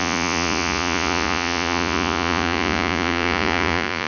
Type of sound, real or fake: fake